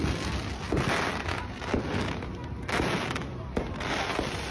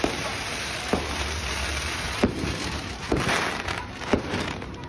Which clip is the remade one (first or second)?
second